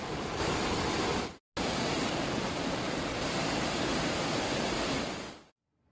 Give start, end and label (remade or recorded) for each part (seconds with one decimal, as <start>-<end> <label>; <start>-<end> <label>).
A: 0.0-5.9 recorded